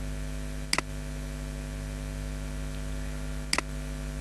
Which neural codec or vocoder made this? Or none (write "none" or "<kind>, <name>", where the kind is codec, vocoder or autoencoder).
none